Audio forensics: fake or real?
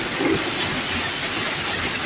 real